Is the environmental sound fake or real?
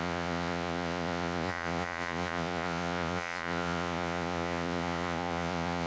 fake